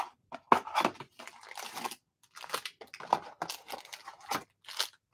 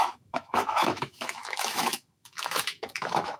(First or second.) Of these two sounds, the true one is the first